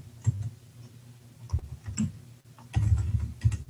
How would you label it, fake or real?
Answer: real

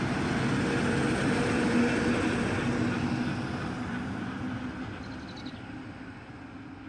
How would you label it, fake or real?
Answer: real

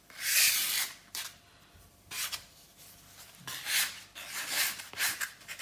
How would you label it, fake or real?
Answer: real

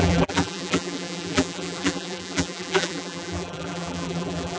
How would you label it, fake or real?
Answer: fake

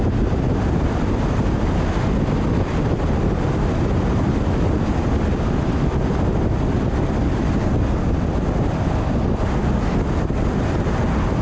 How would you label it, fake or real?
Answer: real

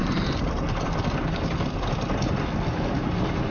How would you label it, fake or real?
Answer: real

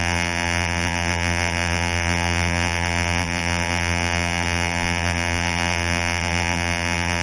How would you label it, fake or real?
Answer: fake